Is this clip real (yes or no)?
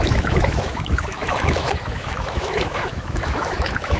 no